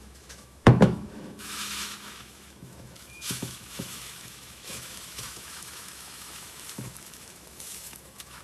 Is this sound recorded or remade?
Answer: remade